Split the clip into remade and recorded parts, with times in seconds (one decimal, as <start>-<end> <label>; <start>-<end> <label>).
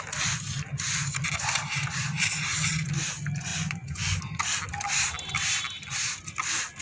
0.0-3.5 recorded; 3.5-4.2 remade; 4.2-6.8 recorded